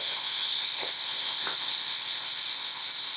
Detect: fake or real fake